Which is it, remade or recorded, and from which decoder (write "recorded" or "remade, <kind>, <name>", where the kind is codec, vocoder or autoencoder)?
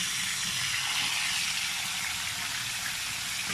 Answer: recorded